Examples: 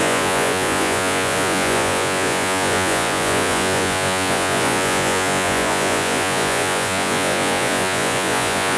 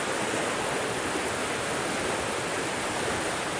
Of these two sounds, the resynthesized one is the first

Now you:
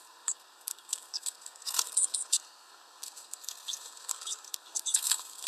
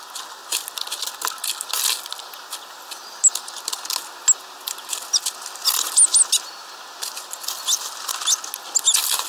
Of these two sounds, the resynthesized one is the first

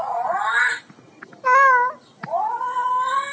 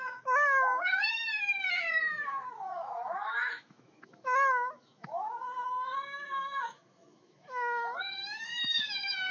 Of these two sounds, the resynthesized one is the second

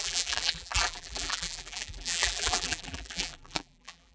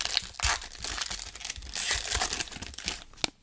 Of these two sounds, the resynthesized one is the first